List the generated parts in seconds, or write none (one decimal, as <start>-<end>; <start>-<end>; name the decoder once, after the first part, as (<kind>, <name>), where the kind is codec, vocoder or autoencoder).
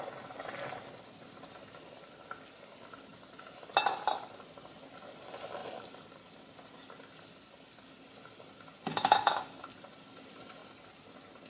8.9-9.5 (codec, DAC)